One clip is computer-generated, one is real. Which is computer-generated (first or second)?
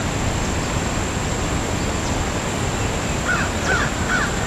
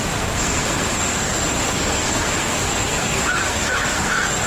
second